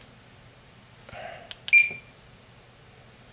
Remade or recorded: recorded